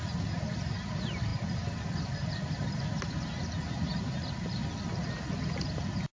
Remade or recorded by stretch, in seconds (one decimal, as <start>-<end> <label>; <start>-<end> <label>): 0.0-6.2 recorded